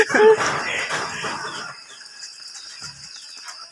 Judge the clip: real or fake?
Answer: real